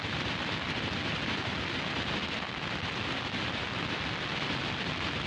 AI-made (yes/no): no